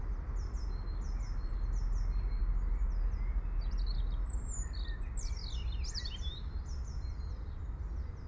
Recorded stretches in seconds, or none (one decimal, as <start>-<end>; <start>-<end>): 0.0-8.3